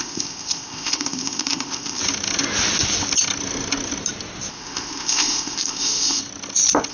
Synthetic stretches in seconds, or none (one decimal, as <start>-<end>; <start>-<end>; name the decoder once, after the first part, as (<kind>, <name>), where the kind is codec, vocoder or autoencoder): 0.0-2.0 (codec, ZipCodec); 4.5-6.2